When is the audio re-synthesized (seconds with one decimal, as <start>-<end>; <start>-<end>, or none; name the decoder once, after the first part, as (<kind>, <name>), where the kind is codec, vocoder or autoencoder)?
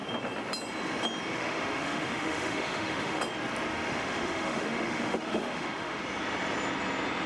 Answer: 1.3-3.2 (autoencoder, DAC-VAE); 3.7-6.0